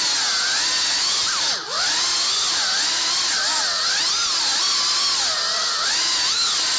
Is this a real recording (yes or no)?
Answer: yes